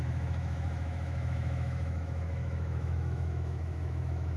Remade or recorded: remade